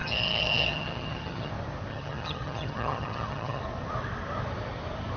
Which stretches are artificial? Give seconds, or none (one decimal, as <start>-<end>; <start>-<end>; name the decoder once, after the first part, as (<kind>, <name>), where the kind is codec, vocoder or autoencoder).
0.0-1.5 (vocoder, HiFi-GAN); 1.9-3.6

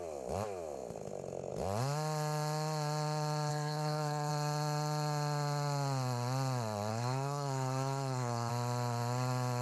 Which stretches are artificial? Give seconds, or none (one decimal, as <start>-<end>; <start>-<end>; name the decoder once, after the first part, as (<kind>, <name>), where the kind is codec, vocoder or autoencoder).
3.5-4.3 (codec, SNAC); 6.9-8.5

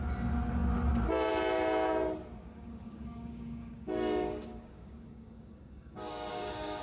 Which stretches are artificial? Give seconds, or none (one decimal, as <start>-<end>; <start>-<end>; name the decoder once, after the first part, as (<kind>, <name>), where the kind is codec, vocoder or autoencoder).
2.5-6.8 (codec, DAC)